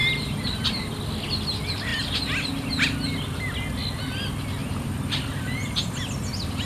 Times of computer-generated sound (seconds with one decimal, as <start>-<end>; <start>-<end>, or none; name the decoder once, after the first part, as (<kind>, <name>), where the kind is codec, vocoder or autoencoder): 0.0-0.9 (vocoder, BigVGAN v2); 4.6-6.3